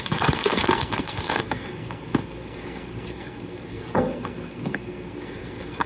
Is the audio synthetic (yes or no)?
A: yes